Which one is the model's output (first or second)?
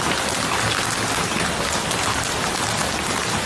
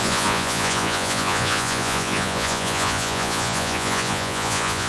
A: second